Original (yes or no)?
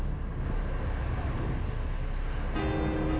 yes